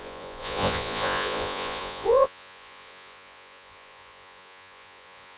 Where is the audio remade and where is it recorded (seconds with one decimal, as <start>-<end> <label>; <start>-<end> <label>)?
0.0-5.4 remade

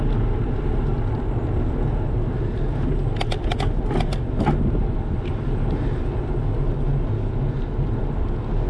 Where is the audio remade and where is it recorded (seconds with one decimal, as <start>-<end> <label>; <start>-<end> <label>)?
0.0-8.7 recorded

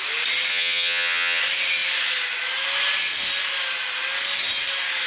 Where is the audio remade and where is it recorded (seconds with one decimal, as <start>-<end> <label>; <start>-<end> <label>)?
0.0-0.5 recorded; 0.5-1.4 remade; 1.4-5.1 recorded

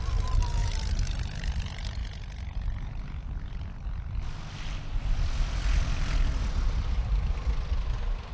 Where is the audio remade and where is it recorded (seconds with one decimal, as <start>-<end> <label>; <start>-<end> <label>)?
0.0-8.3 recorded

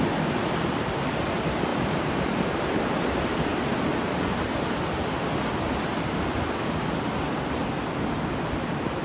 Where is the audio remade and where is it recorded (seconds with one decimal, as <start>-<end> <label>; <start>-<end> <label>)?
0.0-1.7 recorded; 1.7-2.8 remade; 2.8-9.0 recorded

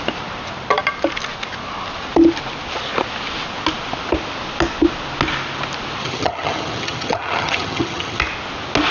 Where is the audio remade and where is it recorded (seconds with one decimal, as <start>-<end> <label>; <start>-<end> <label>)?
0.0-6.0 recorded; 6.0-8.2 remade; 8.2-8.9 recorded